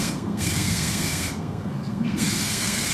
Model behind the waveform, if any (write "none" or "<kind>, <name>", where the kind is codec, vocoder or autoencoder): codec, SNAC